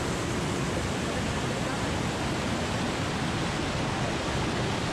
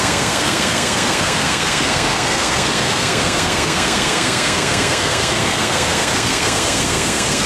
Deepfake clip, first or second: second